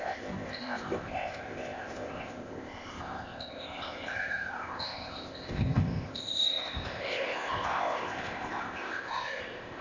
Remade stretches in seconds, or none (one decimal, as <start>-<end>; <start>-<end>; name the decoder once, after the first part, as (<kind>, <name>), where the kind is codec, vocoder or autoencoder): 0.0-9.8 (codec, ZipCodec)